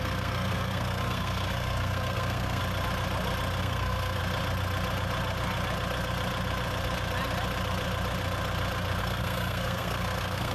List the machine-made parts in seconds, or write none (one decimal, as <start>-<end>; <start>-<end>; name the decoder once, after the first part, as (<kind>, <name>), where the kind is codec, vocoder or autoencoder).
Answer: 0.0-2.6 (codec, SNAC); 3.6-4.2; 9.0-10.5